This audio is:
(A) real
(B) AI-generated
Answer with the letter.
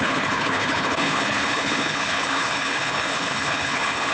B